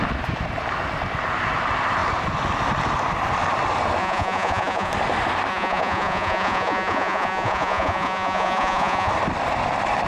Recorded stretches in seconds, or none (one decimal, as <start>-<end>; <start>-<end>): 0.0-4.0; 4.9-5.5; 9.1-10.1